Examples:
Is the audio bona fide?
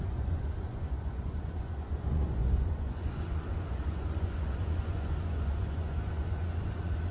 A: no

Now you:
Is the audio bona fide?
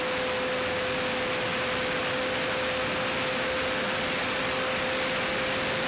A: yes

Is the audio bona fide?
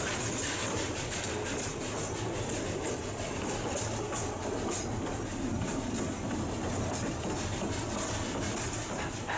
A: yes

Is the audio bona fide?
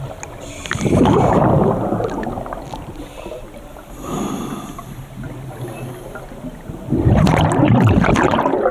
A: yes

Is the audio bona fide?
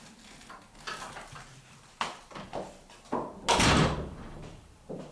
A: yes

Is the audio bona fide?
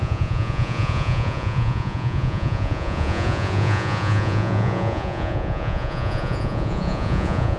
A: no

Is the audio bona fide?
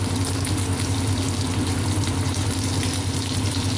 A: yes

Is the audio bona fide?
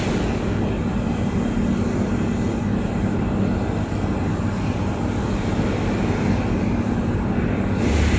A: yes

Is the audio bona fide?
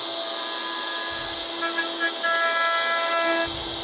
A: yes